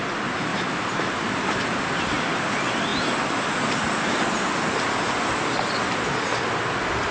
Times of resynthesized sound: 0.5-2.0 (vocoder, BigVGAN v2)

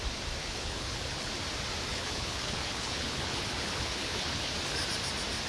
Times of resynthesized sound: 0.4-1.3 (codec, HILCodec); 1.9-4.5

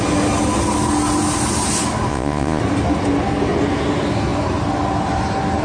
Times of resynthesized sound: 2.1-2.6 (vocoder, Vocos)

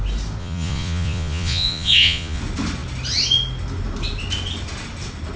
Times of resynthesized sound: 0.4-2.4 (vocoder, Vocos)

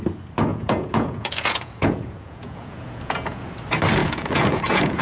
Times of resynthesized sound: 0.5-3.5 (vocoder, Vocos); 4.0-5.0